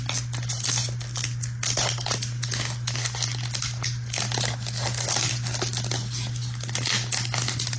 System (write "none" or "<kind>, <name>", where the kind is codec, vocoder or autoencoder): none